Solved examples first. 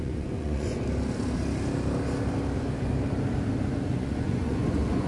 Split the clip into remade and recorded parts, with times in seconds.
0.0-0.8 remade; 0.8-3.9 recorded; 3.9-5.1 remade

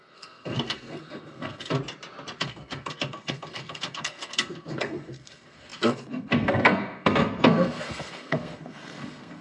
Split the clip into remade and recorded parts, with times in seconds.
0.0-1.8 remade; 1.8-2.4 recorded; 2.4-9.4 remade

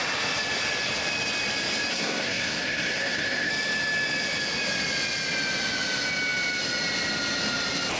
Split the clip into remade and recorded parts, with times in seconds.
0.0-1.9 recorded; 1.9-3.5 remade; 3.5-8.0 recorded

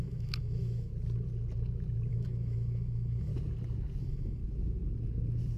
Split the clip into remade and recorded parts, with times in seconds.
0.0-0.9 remade; 0.9-2.1 recorded; 2.1-3.3 remade; 3.3-4.0 recorded; 4.0-4.4 remade; 4.4-5.6 recorded

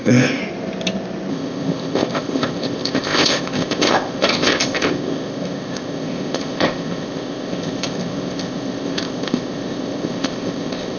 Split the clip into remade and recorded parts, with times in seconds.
0.0-0.4 remade; 0.4-1.3 recorded; 1.3-11.0 remade

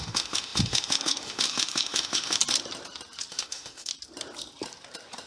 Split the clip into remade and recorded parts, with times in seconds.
0.0-2.4 remade; 2.4-3.3 recorded; 3.3-3.9 remade; 3.9-5.3 recorded

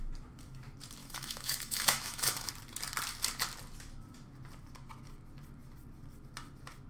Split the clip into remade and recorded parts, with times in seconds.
0.0-1.0 recorded; 1.0-2.5 remade; 2.5-6.9 recorded